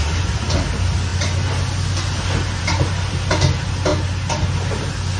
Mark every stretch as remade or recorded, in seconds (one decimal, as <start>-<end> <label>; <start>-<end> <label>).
0.0-5.2 recorded